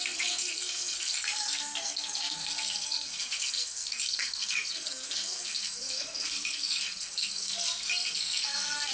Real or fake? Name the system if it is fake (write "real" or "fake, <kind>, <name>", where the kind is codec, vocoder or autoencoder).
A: fake, codec, SNAC